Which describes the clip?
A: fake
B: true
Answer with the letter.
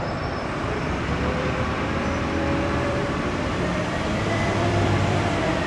A